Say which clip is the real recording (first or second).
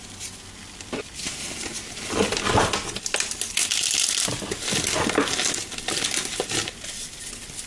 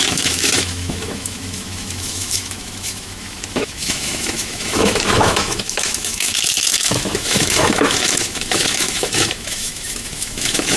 first